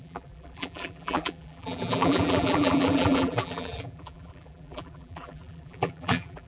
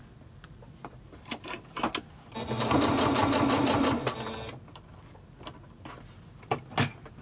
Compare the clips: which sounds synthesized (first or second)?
first